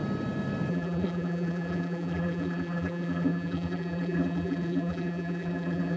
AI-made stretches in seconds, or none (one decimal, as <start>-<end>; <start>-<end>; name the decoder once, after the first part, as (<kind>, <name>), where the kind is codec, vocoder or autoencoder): 0.7-6.0 (vocoder, BigVGAN v2)